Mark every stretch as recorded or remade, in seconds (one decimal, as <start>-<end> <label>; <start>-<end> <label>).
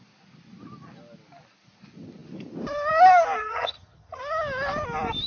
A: 0.0-3.4 recorded; 3.4-4.2 remade; 4.2-5.3 recorded